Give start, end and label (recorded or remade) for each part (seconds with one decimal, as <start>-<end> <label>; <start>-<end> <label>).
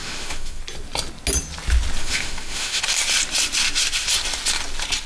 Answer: 0.0-0.6 remade; 0.6-2.0 recorded; 2.0-2.8 remade; 2.8-5.1 recorded